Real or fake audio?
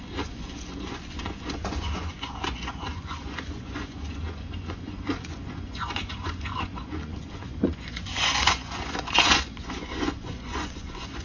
fake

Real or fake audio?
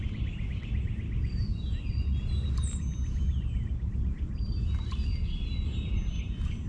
real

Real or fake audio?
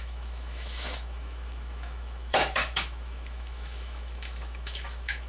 fake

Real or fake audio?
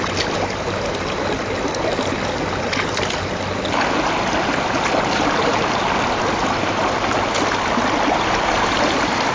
real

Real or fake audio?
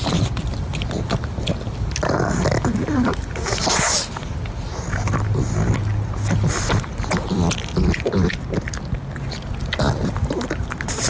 real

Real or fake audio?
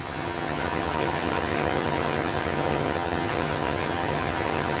fake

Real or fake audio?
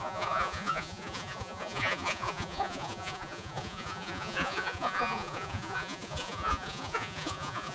fake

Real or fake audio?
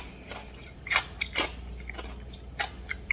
real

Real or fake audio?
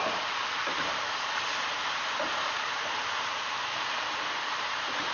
fake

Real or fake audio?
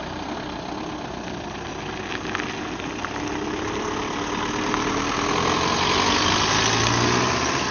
real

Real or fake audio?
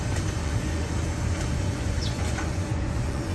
fake